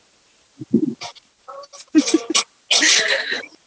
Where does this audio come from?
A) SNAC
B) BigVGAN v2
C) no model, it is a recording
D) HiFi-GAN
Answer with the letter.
C